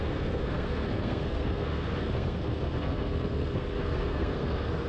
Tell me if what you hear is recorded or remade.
remade